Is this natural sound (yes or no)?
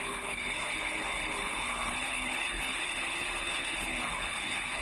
no